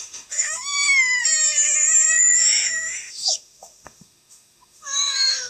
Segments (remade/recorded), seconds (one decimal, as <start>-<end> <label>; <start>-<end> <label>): 0.0-1.2 remade; 1.2-2.1 recorded; 2.1-5.5 remade